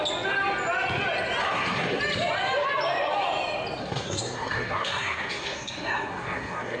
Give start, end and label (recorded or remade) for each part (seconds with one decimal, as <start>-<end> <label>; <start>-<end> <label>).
0.0-1.4 recorded; 1.4-2.0 remade; 2.0-3.8 recorded; 3.8-6.8 remade